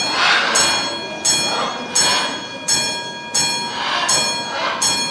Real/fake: real